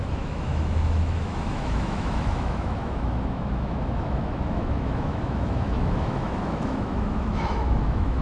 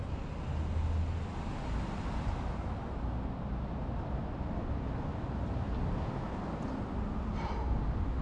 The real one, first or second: second